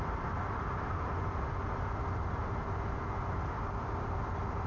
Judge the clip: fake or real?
real